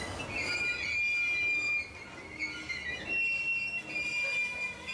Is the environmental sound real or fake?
real